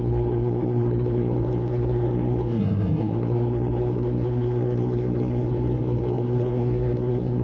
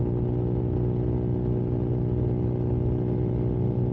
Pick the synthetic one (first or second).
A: first